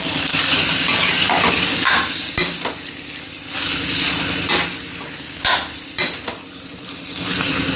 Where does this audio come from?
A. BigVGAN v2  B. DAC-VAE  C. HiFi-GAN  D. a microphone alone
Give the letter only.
D